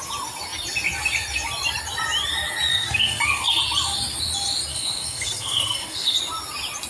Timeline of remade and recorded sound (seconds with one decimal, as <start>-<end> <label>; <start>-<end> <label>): 0.0-2.7 recorded; 2.7-3.6 remade; 3.6-4.7 recorded; 4.7-6.2 remade; 6.2-6.9 recorded